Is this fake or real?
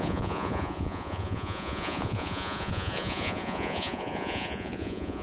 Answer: fake